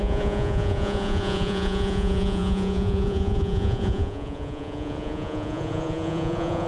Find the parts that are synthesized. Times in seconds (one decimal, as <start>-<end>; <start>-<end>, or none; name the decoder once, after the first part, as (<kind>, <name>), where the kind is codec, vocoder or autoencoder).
0.0-6.7 (vocoder, Vocos)